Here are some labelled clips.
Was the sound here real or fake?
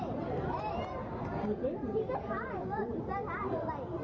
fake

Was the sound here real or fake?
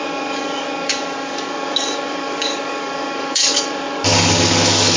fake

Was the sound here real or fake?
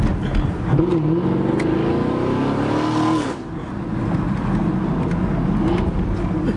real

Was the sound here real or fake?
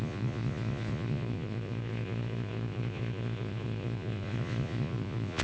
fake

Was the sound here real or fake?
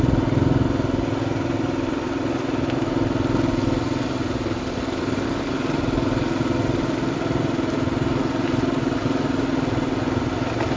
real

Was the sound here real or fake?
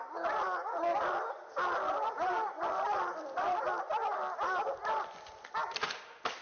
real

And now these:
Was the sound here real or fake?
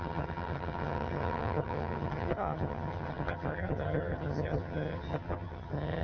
fake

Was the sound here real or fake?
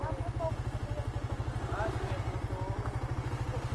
real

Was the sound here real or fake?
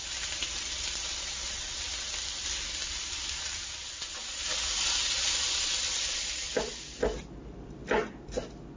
real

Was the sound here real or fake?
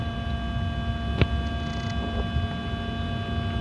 real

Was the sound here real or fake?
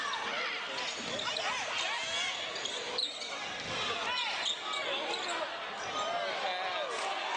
real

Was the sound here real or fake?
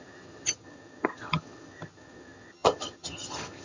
fake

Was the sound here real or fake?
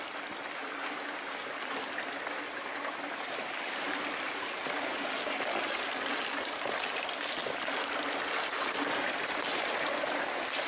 real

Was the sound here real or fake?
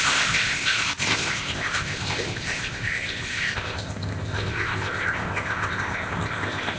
fake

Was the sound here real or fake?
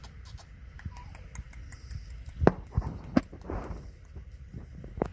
real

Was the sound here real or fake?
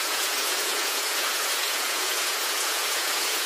fake